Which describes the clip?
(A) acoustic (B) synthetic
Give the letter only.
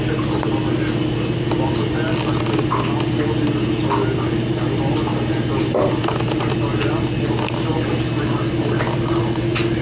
A